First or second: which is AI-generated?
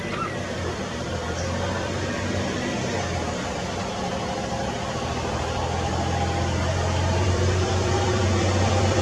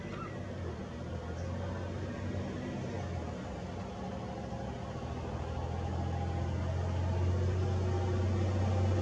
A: first